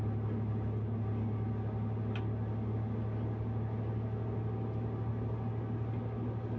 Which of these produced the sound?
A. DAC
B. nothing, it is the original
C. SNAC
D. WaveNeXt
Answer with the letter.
B